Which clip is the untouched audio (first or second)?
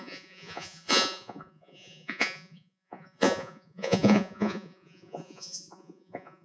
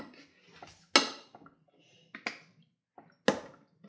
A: second